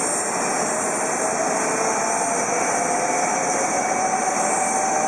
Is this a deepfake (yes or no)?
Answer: no